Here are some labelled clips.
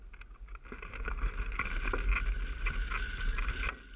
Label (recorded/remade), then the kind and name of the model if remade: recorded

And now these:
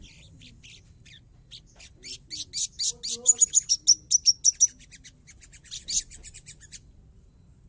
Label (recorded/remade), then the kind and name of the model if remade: recorded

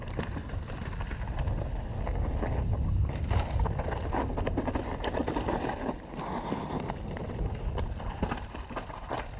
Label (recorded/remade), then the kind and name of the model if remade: recorded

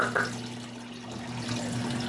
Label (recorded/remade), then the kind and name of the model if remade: recorded